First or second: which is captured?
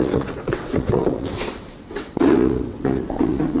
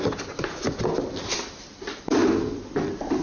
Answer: second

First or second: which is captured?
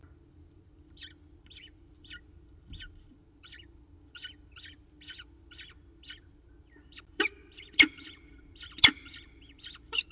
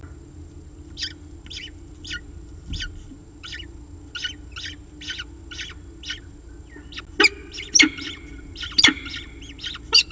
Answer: second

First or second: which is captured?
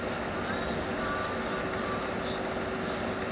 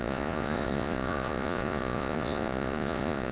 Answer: first